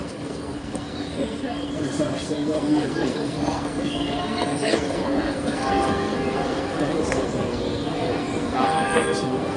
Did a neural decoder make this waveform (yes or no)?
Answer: yes